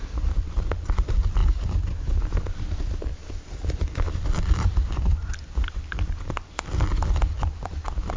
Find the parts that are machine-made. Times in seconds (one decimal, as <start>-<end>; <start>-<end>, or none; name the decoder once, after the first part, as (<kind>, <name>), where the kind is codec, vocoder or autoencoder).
1.4-5.2 (vocoder, BigVGAN v2)